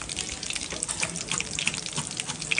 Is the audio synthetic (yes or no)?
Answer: no